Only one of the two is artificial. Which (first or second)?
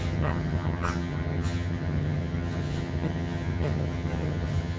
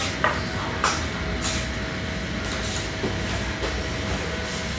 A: first